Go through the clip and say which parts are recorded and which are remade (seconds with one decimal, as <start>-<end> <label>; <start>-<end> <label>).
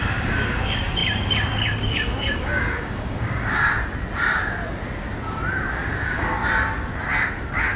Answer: 0.0-3.7 remade; 3.7-5.7 recorded; 5.7-6.4 remade; 6.4-7.8 recorded